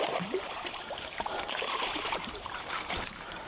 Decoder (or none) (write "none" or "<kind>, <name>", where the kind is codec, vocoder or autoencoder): vocoder, BigVGAN v2